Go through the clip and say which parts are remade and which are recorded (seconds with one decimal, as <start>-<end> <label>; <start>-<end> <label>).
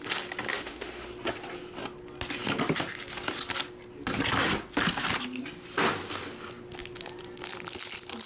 0.0-0.5 recorded; 0.5-1.1 remade; 1.1-8.3 recorded